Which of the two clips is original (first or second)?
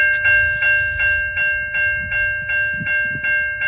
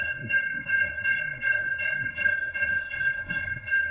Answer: first